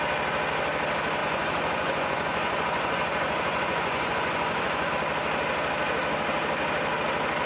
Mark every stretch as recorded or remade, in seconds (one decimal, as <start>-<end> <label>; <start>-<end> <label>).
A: 0.0-1.2 recorded; 1.2-4.9 remade; 4.9-7.5 recorded

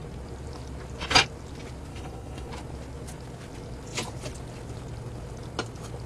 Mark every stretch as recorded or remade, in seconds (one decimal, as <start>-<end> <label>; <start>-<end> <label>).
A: 0.0-1.9 recorded; 1.9-2.5 remade; 2.5-6.1 recorded

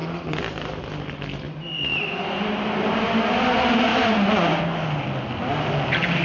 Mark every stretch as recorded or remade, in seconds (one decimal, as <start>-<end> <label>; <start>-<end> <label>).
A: 0.0-0.7 remade; 0.7-1.9 recorded; 1.9-3.0 remade; 3.0-3.9 recorded; 3.9-4.6 remade; 4.6-6.2 recorded

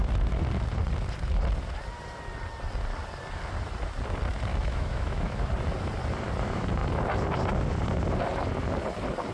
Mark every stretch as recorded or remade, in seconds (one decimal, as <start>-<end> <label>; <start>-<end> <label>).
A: 0.0-4.5 recorded; 4.5-5.5 remade; 5.5-9.3 recorded

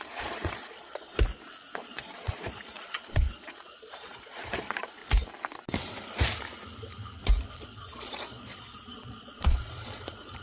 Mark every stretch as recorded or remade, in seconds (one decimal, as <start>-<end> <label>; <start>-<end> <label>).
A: 0.0-1.1 remade; 1.1-1.8 recorded; 1.8-5.0 remade; 5.0-7.5 recorded; 7.5-10.4 remade

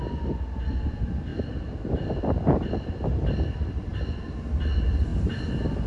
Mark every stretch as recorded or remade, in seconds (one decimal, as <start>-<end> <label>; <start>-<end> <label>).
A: 0.0-5.9 recorded

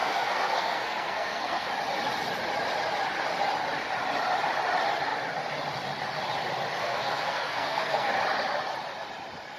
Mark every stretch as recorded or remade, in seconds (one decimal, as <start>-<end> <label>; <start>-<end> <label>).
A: 0.0-1.7 remade; 1.7-6.8 recorded; 6.8-8.1 remade; 8.1-9.6 recorded